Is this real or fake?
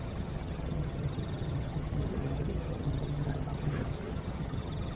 fake